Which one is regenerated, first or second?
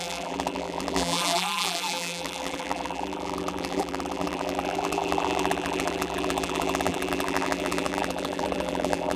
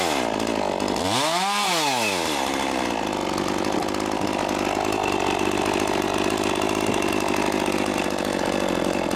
first